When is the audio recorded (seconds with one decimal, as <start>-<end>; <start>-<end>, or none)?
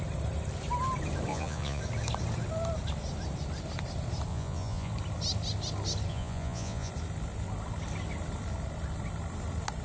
0.0-1.3; 1.8-4.3; 4.9-6.1; 6.9-9.8